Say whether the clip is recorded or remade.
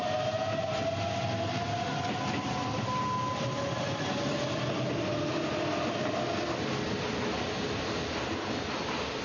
recorded